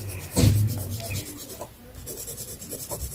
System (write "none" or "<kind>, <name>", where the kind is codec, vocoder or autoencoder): none